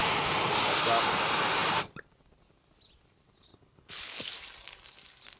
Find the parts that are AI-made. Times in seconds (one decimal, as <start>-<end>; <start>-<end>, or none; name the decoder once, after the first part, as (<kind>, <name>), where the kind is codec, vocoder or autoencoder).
3.5-4.3 (codec, HILCodec)